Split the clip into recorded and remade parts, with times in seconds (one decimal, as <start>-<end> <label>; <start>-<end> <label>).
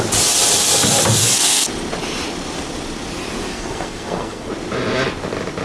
0.0-1.2 recorded; 1.2-1.7 remade; 1.7-3.5 recorded; 3.5-4.5 remade; 4.5-5.6 recorded